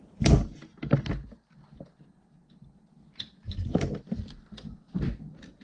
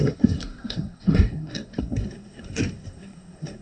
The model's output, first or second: second